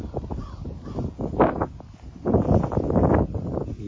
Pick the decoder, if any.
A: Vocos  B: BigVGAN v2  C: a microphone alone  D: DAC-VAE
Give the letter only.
C